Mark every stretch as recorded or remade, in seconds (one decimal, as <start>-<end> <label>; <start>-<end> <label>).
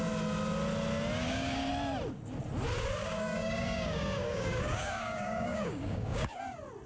0.0-1.2 recorded; 1.2-1.7 remade; 1.7-3.0 recorded; 3.0-6.4 remade; 6.4-6.9 recorded